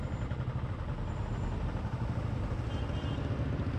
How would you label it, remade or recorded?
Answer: recorded